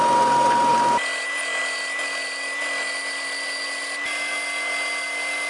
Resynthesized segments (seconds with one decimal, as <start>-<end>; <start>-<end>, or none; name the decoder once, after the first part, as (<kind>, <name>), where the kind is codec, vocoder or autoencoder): none